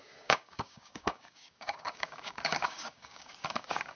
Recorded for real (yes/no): no